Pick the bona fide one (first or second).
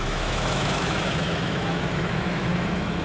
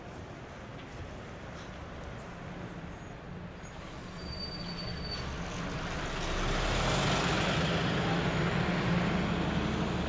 second